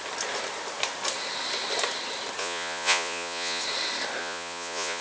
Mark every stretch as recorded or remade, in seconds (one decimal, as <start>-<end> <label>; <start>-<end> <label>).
0.0-2.4 recorded; 2.4-3.6 remade; 3.6-4.2 recorded; 4.2-5.0 remade